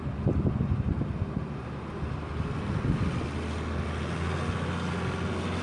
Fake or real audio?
real